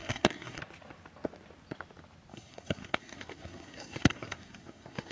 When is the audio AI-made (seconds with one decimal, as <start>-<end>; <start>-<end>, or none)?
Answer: 0.0-0.6; 2.3-5.1